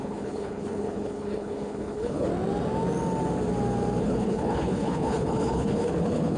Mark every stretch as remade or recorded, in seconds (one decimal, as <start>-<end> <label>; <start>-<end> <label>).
0.0-2.3 remade; 2.3-4.0 recorded; 4.0-6.4 remade

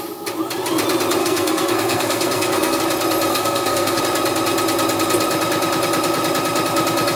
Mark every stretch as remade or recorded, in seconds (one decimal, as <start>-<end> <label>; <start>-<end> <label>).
0.0-1.2 recorded; 1.2-2.8 remade; 2.8-3.3 recorded; 3.3-4.0 remade; 4.0-7.2 recorded

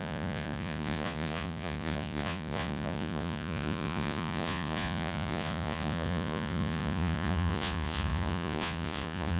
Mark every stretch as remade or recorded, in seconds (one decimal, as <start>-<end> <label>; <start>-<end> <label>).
0.0-9.4 remade

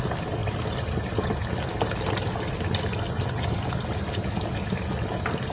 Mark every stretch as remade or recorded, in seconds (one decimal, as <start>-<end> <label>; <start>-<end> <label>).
0.0-5.5 recorded

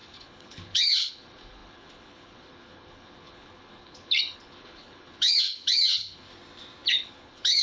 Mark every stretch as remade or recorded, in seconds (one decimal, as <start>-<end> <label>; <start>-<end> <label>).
0.0-6.3 remade; 6.3-6.9 recorded; 6.9-7.6 remade

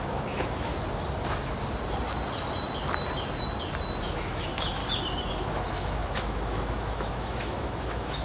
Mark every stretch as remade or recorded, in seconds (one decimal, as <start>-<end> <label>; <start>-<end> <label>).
0.0-0.7 remade; 0.7-4.0 recorded; 4.0-4.8 remade; 4.8-5.3 recorded; 5.3-8.2 remade

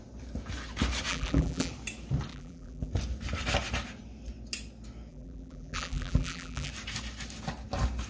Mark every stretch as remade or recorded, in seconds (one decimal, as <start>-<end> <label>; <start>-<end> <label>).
0.0-1.1 recorded; 1.1-1.7 remade; 1.7-2.3 recorded; 2.3-2.9 remade; 2.9-5.1 recorded; 5.1-6.7 remade; 6.7-8.1 recorded

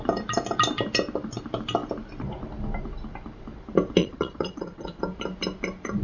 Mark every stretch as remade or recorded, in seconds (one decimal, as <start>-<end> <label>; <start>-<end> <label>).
0.0-4.0 recorded; 4.0-5.0 remade; 5.0-6.0 recorded